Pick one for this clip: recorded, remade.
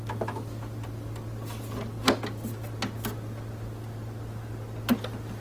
recorded